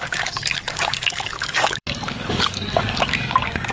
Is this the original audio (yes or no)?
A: no